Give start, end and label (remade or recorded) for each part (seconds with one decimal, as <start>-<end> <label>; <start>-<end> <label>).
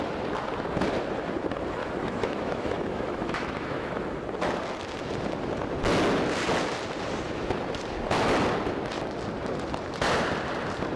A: 0.0-1.8 recorded; 1.8-4.0 remade; 4.0-11.0 recorded